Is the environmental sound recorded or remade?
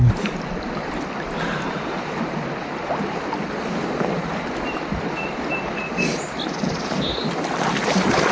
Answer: recorded